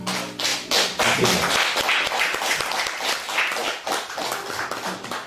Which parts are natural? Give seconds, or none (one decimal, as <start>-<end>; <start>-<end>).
0.0-5.3